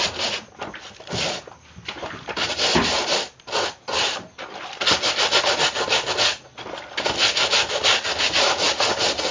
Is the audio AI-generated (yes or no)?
no